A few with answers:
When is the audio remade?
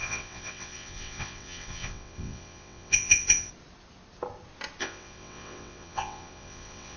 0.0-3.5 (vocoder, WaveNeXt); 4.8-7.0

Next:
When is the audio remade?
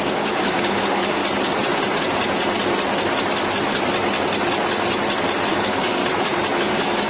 0.0-1.2 (codec, DAC); 5.5-6.0; 6.6-7.1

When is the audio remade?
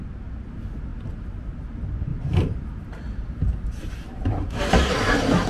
0.9-1.5 (vocoder, BigVGAN v2); 2.1-4.6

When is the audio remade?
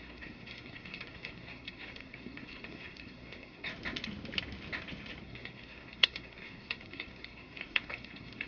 0.0-3.7 (codec, SNAC); 5.2-8.5